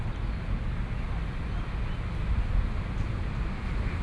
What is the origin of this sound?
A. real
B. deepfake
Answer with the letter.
A